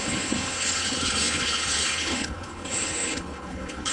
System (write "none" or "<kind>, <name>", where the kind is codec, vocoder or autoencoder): codec, HILCodec